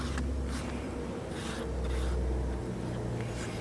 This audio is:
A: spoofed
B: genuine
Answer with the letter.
B